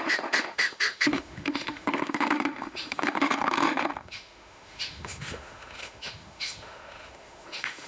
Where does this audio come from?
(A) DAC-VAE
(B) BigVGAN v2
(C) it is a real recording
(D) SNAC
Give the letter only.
A